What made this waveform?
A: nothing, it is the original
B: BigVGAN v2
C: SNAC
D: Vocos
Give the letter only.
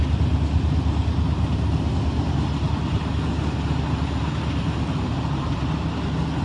A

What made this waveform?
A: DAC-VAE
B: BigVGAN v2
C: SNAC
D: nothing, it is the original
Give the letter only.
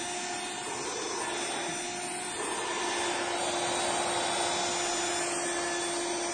D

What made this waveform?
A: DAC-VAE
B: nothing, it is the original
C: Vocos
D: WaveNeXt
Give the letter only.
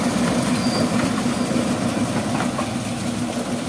B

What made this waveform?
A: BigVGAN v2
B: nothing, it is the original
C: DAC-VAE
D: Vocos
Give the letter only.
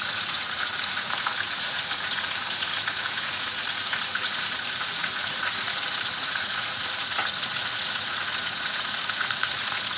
D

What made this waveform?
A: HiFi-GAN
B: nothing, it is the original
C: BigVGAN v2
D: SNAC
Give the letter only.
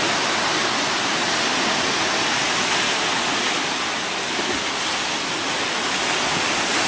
B